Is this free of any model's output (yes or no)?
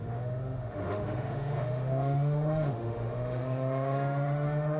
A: no